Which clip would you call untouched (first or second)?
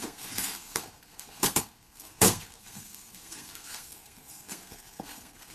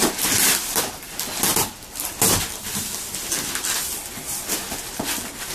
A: second